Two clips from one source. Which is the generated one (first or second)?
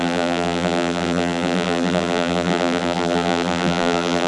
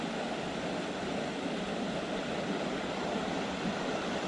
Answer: first